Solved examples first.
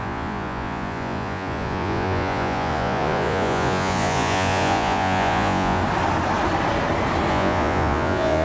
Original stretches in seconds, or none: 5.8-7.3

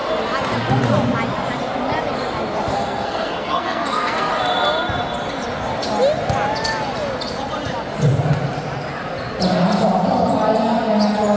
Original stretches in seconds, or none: 0.0-2.7; 4.3-11.4

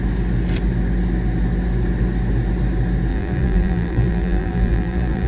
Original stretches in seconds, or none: 0.0-3.1

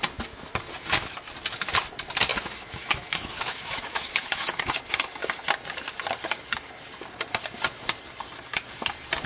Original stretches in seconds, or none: 0.0-2.3; 4.6-9.3

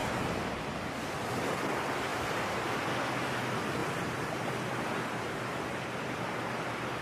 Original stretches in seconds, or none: 0.6-2.1; 2.9-3.8; 4.5-7.0

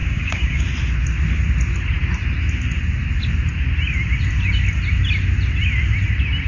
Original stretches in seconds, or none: 0.6-6.5